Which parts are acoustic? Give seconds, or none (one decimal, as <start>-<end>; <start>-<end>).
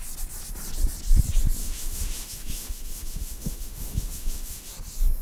0.0-1.6; 4.7-5.2